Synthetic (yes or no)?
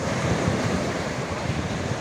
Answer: yes